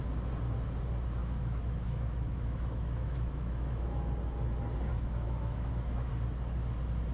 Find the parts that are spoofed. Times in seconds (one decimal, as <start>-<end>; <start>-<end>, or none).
1.2-4.1; 4.9-6.1